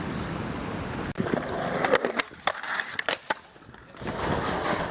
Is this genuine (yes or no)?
yes